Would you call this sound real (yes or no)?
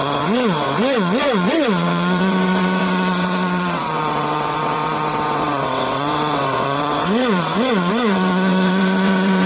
no